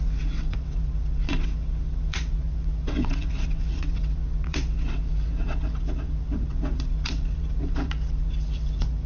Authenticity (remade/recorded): remade